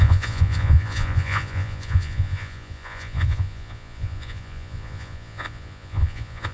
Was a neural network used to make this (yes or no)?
yes